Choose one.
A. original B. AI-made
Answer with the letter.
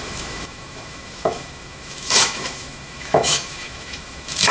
B